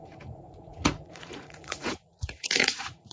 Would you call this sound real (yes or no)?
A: no